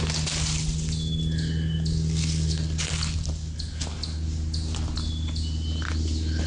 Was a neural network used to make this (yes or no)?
no